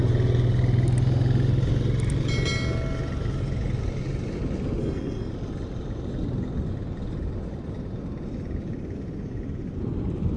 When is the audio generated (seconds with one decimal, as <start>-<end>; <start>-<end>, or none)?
4.8-5.3

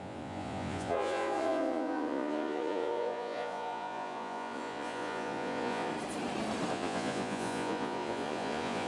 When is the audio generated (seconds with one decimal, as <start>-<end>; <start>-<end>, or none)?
0.0-5.9; 6.7-8.9

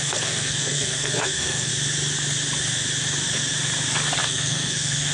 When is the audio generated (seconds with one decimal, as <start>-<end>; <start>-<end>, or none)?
0.0-1.7; 4.2-5.1

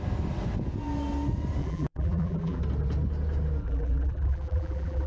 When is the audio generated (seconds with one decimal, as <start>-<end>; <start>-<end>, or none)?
1.6-2.6; 3.6-5.1

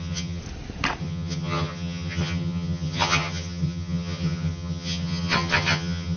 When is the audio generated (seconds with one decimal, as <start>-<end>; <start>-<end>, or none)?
0.0-0.4; 1.0-6.2